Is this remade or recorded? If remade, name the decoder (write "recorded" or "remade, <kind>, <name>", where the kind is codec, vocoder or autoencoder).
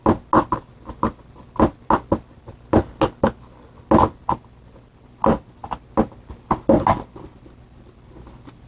recorded